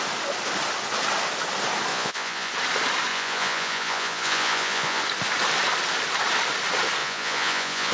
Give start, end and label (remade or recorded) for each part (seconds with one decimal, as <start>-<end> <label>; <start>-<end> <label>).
0.0-1.9 recorded; 1.9-2.5 remade; 2.5-3.1 recorded; 3.1-5.0 remade; 5.0-7.0 recorded; 7.0-7.9 remade